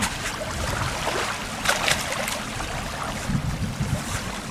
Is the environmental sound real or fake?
real